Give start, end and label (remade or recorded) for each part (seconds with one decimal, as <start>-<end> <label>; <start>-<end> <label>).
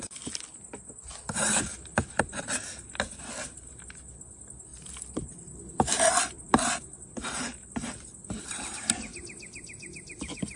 0.0-10.6 recorded